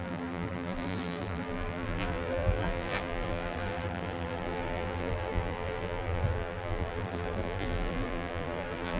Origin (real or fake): fake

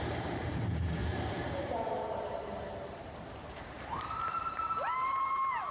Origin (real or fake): fake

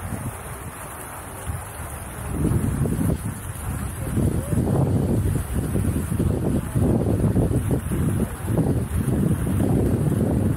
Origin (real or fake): real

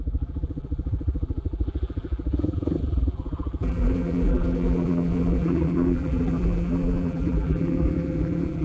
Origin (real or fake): fake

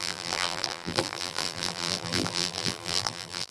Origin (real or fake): fake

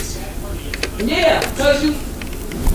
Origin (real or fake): real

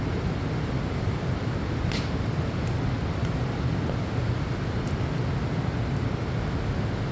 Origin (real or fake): real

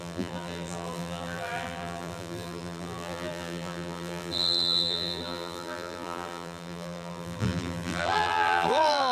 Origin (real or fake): fake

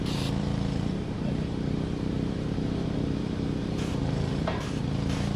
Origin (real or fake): fake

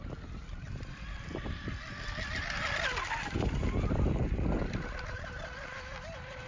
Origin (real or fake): real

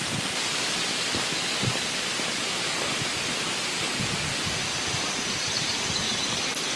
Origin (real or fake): real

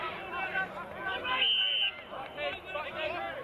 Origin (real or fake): real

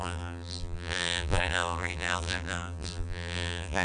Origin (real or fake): fake